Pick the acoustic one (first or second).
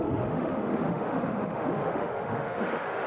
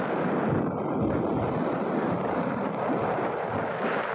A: second